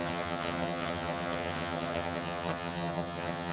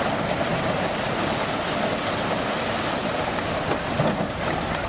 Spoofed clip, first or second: first